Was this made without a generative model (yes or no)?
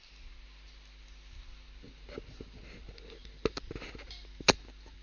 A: yes